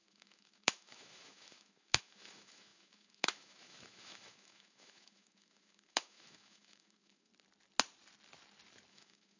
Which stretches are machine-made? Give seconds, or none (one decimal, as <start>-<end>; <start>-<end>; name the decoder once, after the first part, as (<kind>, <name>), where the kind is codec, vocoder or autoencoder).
0.0-7.3 (autoencoder, DAC-VAE); 8.9-9.4